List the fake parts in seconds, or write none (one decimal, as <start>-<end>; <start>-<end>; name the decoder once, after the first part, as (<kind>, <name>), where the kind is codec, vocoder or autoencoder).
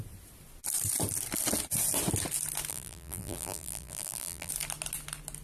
2.7-4.5 (vocoder, BigVGAN v2)